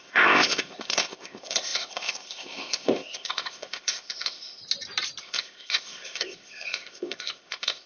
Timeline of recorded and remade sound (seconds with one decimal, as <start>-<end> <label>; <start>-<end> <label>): 0.0-4.6 remade; 4.6-5.2 recorded; 5.2-7.9 remade